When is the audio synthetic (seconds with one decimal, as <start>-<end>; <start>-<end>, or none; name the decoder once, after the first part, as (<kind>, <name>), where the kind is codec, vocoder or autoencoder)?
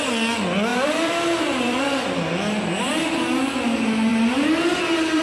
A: 0.7-1.8 (vocoder, BigVGAN v2); 4.1-5.2